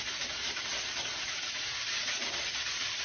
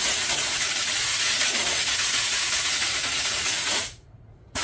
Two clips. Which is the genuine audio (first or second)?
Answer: first